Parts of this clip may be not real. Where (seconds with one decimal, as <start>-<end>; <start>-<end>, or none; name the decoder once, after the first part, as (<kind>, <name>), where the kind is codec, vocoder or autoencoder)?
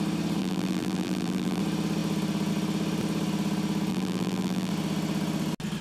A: 0.4-1.6 (vocoder, BigVGAN v2); 3.9-4.7